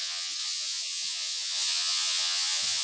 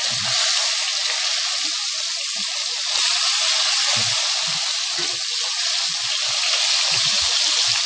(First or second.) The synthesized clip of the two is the first